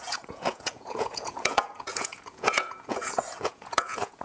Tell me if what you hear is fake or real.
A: fake